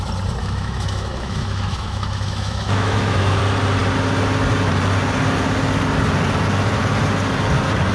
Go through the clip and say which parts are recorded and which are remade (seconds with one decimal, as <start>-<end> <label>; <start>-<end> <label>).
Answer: 0.0-0.4 recorded; 0.4-3.4 remade; 3.4-7.9 recorded